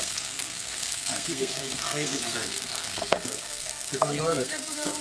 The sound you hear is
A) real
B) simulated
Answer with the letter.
B